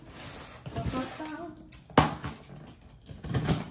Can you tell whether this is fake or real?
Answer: real